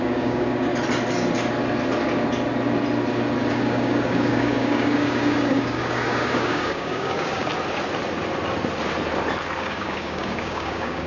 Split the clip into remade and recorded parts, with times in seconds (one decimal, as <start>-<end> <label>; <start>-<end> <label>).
0.0-0.7 remade; 0.7-3.5 recorded; 3.5-7.5 remade; 7.5-9.6 recorded; 9.6-11.1 remade